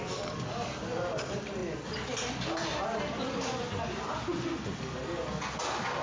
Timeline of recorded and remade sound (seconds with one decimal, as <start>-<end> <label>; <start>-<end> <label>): 0.0-6.0 recorded